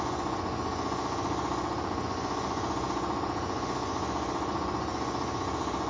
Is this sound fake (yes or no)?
yes